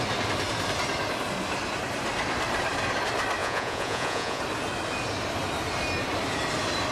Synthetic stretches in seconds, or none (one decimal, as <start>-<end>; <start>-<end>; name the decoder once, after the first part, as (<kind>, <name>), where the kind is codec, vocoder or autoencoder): 3.4-4.4 (vocoder, Vocos)